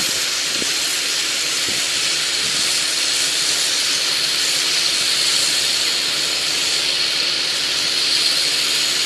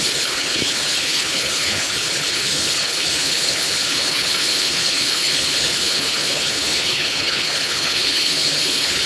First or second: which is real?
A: first